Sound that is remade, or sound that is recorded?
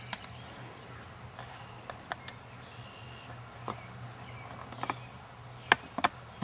recorded